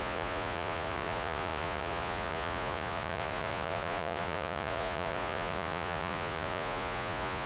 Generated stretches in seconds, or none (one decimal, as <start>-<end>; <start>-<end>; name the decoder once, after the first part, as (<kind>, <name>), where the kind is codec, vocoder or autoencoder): 0.0-7.5 (vocoder, Vocos)